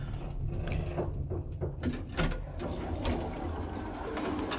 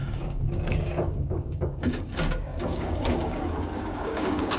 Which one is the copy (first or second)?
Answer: second